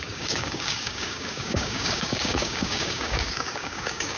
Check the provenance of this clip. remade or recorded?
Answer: remade